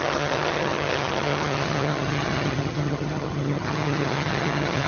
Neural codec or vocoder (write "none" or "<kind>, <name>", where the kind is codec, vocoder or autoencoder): vocoder, HiFi-GAN